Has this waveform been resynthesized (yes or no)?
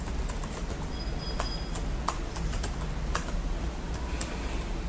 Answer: no